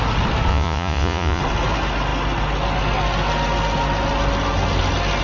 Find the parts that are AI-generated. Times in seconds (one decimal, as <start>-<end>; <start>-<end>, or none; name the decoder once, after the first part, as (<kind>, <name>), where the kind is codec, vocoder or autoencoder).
0.5-1.4 (vocoder, Vocos)